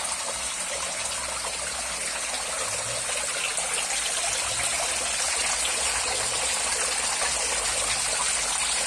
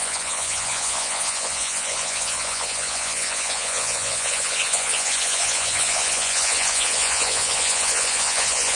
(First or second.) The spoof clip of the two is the second